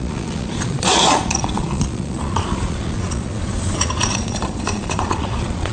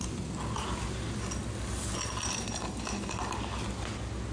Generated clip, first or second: first